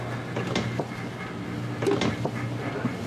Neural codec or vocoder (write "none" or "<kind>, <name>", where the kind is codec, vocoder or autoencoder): none